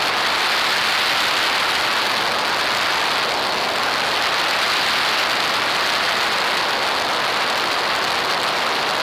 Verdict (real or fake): real